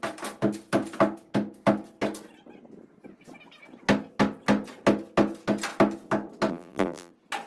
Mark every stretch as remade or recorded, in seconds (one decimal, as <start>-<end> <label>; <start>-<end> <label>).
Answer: 0.0-6.5 recorded; 6.5-7.1 remade; 7.1-7.5 recorded